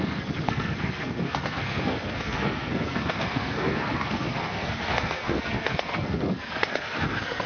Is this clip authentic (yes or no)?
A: no